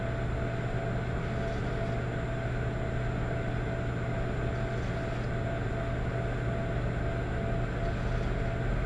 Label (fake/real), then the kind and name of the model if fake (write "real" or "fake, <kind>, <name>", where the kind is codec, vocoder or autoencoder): real